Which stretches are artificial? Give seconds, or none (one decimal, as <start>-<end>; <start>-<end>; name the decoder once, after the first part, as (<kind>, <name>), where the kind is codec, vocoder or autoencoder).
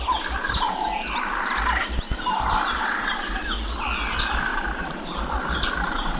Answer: 4.5-6.2 (vocoder, BigVGAN v2)